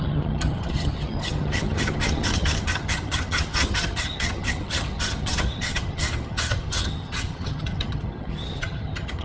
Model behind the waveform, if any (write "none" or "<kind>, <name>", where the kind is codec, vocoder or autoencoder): vocoder, HiFi-GAN